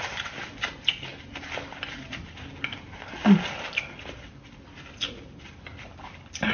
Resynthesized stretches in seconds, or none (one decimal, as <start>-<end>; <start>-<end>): none